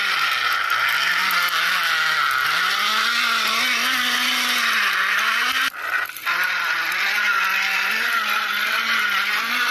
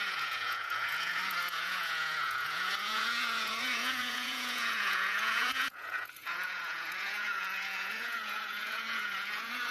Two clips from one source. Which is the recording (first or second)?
first